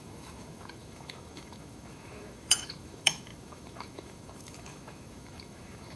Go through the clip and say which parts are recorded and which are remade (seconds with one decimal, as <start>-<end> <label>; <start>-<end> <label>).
0.0-6.0 remade